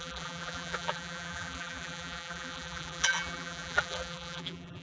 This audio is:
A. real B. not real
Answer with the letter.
B